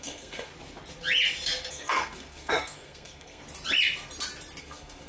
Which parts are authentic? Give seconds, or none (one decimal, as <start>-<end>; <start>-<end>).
0.5-1.7; 3.4-4.6